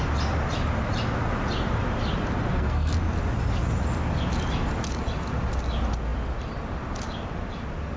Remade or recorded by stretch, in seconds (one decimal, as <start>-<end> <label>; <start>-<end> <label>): 0.0-2.5 recorded; 2.5-3.0 remade; 3.0-8.0 recorded